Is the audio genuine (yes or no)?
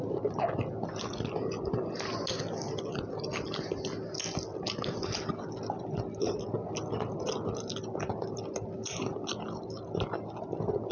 yes